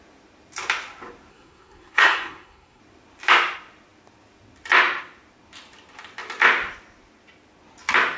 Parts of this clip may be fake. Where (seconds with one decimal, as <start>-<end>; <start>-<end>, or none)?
1.3-2.8